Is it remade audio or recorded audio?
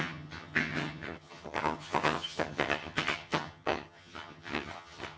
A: remade